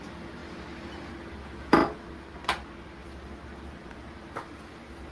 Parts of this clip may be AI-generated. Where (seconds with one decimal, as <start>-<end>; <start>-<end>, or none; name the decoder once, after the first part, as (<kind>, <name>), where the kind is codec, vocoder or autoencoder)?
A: none